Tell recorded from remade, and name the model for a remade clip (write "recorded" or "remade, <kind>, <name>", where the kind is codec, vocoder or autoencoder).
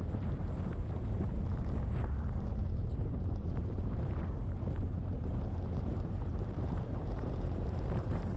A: remade, vocoder, BigVGAN v2